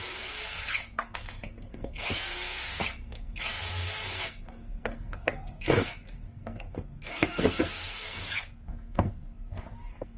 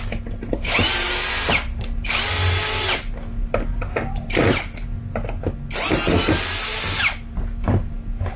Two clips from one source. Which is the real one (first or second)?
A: second